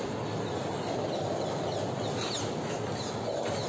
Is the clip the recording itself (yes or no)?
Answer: yes